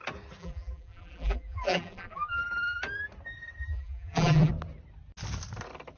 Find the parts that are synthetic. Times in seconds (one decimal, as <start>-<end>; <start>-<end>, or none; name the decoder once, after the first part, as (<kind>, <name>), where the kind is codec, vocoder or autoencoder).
0.4-2.4 (vocoder, BigVGAN v2); 3.6-4.5